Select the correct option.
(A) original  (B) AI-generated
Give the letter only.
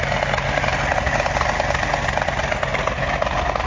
A